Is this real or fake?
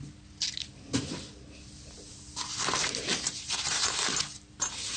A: real